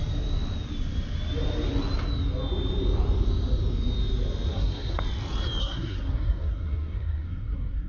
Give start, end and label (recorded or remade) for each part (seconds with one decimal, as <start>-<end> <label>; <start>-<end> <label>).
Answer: 0.0-4.5 recorded; 4.5-5.0 remade; 5.0-5.6 recorded; 5.6-7.9 remade